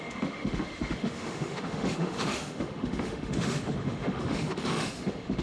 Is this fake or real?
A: fake